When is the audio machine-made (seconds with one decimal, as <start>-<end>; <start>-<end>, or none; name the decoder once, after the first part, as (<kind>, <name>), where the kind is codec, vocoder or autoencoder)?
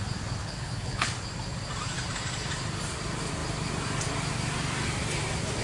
0.4-1.1 (codec, HILCodec)